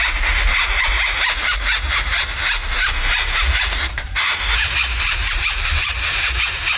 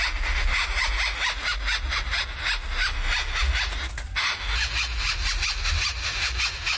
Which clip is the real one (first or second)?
second